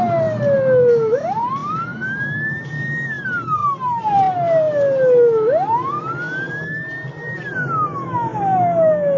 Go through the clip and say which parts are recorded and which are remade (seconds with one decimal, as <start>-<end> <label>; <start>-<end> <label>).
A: 0.0-7.9 recorded; 7.9-9.2 remade

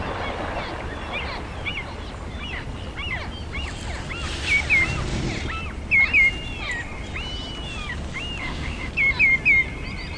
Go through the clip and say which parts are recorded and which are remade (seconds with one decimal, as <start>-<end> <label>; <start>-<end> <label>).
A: 0.0-8.4 recorded; 8.4-8.9 remade; 8.9-10.2 recorded

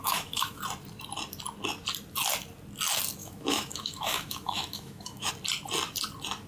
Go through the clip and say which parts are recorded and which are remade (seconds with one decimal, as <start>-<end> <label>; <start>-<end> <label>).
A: 0.0-0.6 remade; 0.6-3.2 recorded; 3.2-5.3 remade; 5.3-6.5 recorded

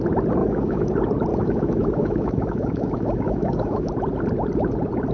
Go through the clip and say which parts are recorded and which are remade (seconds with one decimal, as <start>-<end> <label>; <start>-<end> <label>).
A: 0.0-0.4 recorded; 0.4-0.9 remade; 0.9-1.3 recorded; 1.3-3.9 remade; 3.9-5.1 recorded

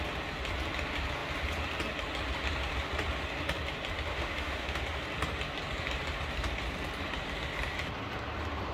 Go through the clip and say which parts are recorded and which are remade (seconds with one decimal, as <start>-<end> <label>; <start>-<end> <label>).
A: 0.0-4.1 recorded; 4.1-4.8 remade; 4.8-8.7 recorded

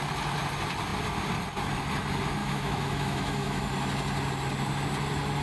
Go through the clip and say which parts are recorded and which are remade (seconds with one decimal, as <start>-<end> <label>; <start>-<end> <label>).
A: 0.0-2.4 recorded; 2.4-3.6 remade; 3.6-5.4 recorded

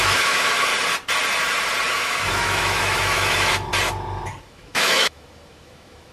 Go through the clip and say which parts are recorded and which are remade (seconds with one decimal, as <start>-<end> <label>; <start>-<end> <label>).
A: 0.0-0.7 remade; 0.7-1.9 recorded; 1.9-3.7 remade; 3.7-4.4 recorded; 4.4-6.1 remade